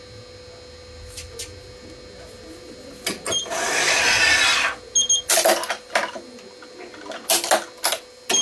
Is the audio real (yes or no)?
yes